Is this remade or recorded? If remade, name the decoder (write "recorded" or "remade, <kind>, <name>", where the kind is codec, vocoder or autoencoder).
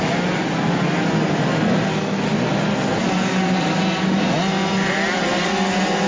recorded